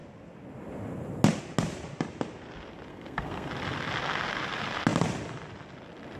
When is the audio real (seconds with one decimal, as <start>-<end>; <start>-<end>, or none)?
0.0-2.9; 3.5-6.2